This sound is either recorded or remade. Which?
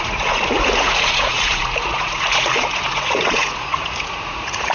remade